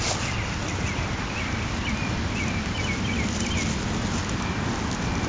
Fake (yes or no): no